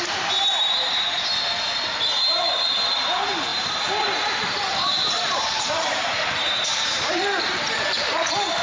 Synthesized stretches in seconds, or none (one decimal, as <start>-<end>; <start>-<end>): 0.0-1.3; 1.9-8.6